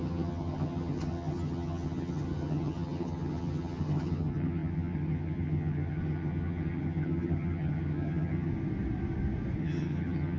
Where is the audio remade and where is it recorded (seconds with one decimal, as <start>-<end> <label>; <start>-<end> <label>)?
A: 0.0-8.5 remade; 8.5-9.6 recorded; 9.6-10.4 remade